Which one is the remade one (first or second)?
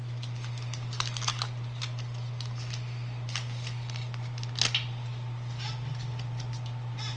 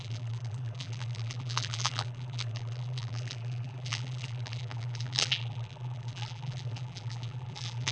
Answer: second